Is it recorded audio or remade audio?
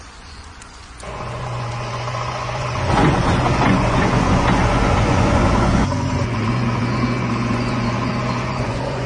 remade